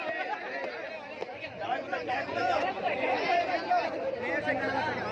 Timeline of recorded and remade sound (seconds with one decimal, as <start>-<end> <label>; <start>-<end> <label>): 0.0-1.3 recorded; 1.3-3.5 remade; 3.5-5.1 recorded